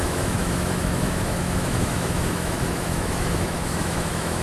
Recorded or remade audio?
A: remade